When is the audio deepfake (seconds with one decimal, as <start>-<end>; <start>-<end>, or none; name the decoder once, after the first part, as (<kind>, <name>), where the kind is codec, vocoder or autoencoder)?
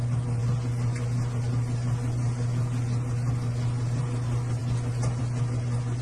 none